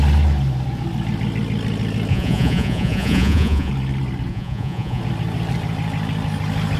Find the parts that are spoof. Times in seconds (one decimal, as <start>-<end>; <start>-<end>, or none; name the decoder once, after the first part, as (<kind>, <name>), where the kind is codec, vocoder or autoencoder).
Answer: 2.1-3.7 (vocoder, Vocos); 4.3-5.0